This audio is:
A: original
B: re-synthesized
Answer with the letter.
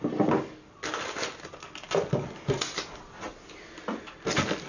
A